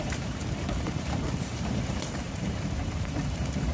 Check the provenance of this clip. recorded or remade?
remade